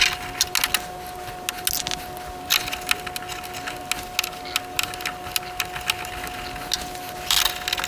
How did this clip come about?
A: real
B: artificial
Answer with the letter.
A